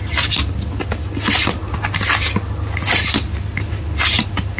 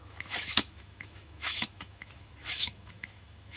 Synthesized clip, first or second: second